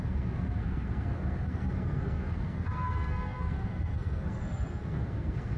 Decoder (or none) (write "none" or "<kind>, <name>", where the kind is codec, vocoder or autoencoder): codec, SNAC